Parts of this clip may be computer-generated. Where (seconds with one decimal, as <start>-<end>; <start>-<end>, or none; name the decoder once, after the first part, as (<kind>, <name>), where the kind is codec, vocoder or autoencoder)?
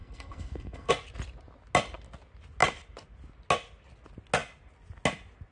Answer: 0.0-0.9 (codec, SNAC)